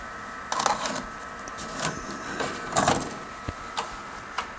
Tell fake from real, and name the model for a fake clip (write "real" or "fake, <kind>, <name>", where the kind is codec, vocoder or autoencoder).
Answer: real